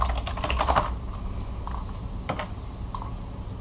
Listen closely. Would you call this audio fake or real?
real